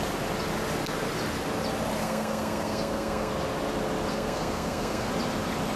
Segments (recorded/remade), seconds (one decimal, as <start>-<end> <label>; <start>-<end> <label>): 0.0-2.0 recorded; 2.0-3.3 remade; 3.3-4.1 recorded; 4.1-5.1 remade; 5.1-5.8 recorded